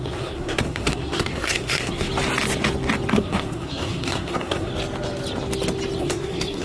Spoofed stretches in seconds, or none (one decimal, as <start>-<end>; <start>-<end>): 0.0-2.1; 3.1-4.7; 6.0-6.6